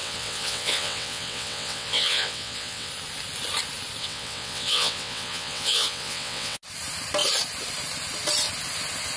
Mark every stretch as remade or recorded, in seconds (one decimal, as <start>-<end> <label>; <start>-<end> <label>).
0.0-2.9 remade; 2.9-4.0 recorded; 4.0-6.6 remade; 6.6-9.2 recorded